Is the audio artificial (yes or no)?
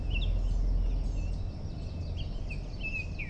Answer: no